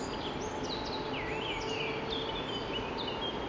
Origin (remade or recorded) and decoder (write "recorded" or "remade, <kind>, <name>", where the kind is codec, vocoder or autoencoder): recorded